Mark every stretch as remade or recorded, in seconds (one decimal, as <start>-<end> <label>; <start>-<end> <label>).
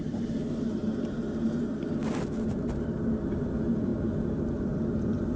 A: 0.0-5.4 recorded